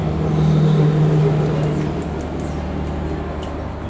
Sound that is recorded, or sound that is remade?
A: recorded